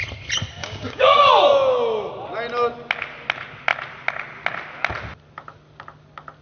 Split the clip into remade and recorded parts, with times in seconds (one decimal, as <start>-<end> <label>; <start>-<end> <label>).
0.0-0.6 recorded; 0.6-1.3 remade; 1.3-6.4 recorded